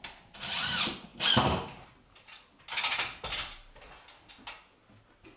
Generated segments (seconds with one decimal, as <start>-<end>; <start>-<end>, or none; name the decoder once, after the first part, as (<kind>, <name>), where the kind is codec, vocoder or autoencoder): none